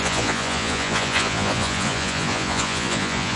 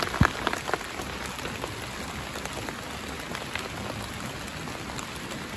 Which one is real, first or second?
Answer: second